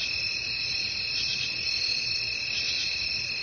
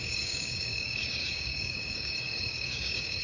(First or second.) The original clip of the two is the first